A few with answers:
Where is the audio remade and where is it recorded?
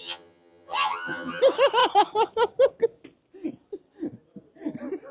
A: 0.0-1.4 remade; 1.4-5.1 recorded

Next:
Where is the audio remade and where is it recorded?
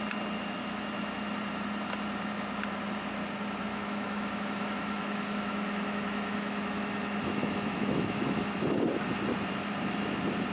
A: 0.0-3.7 recorded; 3.7-8.4 remade; 8.4-10.5 recorded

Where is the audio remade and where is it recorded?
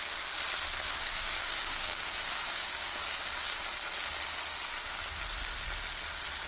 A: 0.0-0.8 recorded; 0.8-3.0 remade; 3.0-6.5 recorded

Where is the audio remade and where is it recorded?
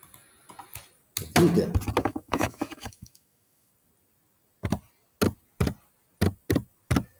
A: 0.0-2.0 recorded; 2.0-3.7 remade; 3.7-7.2 recorded